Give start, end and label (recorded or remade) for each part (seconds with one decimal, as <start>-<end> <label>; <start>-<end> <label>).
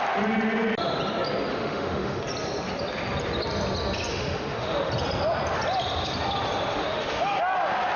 0.0-1.5 recorded; 1.5-2.2 remade; 2.2-4.1 recorded; 4.1-4.9 remade; 4.9-6.7 recorded; 6.7-7.4 remade; 7.4-8.0 recorded